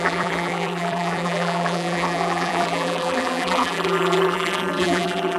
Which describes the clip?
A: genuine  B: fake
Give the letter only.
B